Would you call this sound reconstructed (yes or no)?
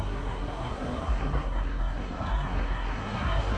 yes